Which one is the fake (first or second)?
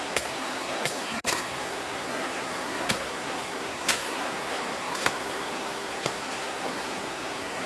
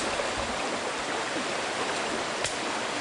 first